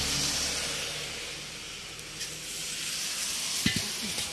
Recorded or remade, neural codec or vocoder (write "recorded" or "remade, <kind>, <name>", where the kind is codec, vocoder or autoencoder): recorded